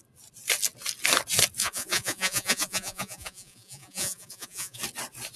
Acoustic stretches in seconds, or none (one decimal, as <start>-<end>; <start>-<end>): 0.0-1.6; 4.8-5.4